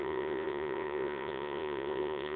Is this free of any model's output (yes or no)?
no